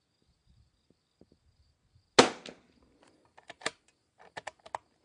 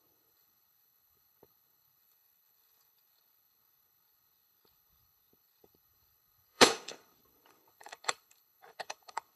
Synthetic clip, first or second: second